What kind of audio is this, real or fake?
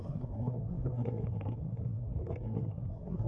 fake